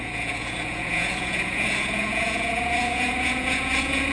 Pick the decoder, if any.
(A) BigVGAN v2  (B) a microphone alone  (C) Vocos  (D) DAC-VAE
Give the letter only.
C